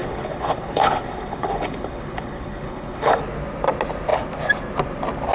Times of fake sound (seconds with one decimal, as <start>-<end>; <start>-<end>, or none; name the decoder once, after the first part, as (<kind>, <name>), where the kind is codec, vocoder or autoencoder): 0.0-3.2 (codec, HILCodec)